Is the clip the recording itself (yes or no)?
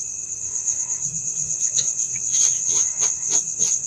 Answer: no